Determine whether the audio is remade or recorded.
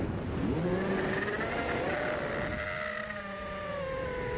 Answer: recorded